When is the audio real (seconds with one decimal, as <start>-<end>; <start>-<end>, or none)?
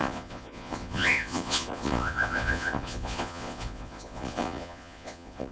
none